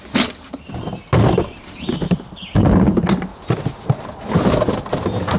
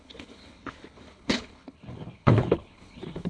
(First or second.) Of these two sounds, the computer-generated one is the second